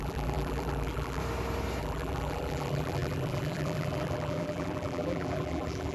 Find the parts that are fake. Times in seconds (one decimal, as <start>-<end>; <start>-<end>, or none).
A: 0.0-1.2; 1.8-5.9